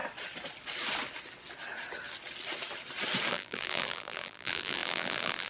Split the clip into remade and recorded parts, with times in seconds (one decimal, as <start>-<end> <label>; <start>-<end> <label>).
0.0-3.3 recorded; 3.3-5.5 remade